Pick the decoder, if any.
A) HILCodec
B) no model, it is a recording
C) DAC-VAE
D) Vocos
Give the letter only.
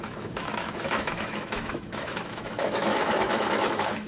C